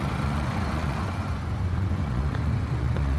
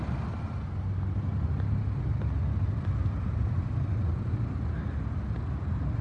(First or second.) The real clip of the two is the second